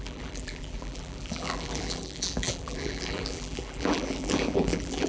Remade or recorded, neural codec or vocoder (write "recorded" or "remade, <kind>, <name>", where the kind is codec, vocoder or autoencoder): remade, vocoder, BigVGAN v2